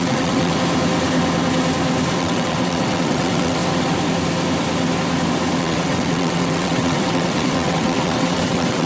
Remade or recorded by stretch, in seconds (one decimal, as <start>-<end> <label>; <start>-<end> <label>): 0.0-0.5 remade; 0.5-2.2 recorded; 2.2-3.6 remade; 3.6-5.6 recorded; 5.6-8.9 remade

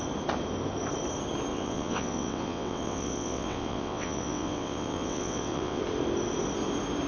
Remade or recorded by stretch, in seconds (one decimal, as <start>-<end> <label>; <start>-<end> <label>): 0.0-1.5 recorded; 1.5-5.8 remade; 5.8-7.1 recorded

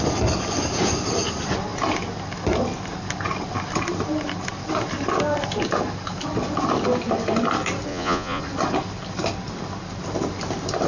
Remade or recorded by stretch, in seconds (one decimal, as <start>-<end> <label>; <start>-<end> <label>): 0.0-7.9 recorded; 7.9-8.4 remade; 8.4-10.9 recorded

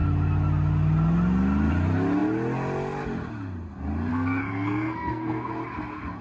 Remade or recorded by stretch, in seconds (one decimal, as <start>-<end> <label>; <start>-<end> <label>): 0.0-4.1 recorded; 4.1-5.5 remade; 5.5-6.2 recorded